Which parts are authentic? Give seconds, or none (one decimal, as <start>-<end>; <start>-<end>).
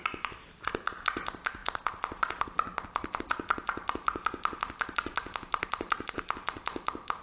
0.0-7.2